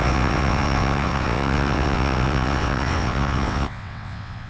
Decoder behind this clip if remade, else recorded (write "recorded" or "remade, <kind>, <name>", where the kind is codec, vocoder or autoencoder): remade, vocoder, WaveNeXt